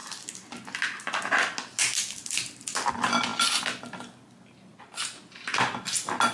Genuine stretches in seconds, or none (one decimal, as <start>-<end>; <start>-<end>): 0.0-6.3